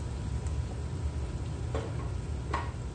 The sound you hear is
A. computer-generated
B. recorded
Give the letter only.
B